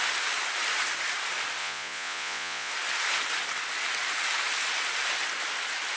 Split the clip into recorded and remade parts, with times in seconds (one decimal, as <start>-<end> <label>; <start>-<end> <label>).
0.0-1.6 recorded; 1.6-2.7 remade; 2.7-6.0 recorded